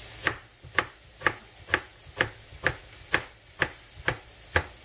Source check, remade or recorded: recorded